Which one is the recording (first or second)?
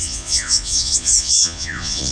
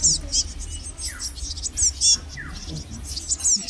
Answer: second